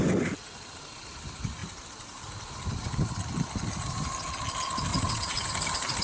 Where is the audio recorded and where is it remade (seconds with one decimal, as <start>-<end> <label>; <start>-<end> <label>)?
0.0-4.9 recorded; 4.9-5.5 remade; 5.5-6.0 recorded